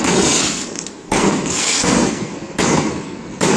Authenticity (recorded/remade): remade